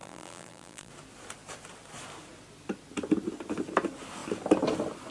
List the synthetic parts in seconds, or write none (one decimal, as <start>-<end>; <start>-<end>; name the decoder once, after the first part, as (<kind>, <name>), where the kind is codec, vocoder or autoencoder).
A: 0.0-0.9 (vocoder, BigVGAN v2)